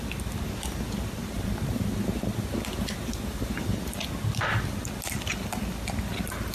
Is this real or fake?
real